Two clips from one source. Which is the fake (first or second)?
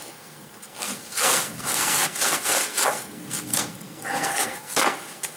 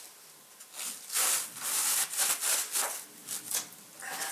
first